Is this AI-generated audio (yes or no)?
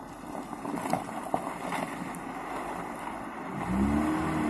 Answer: no